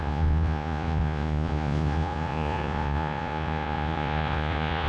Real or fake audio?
fake